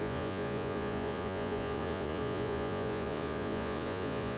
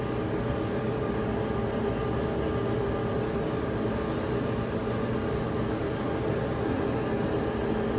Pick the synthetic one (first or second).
first